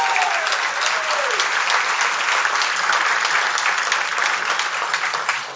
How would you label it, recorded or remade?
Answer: recorded